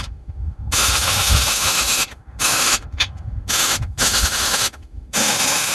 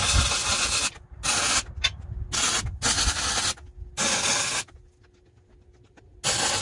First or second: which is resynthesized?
first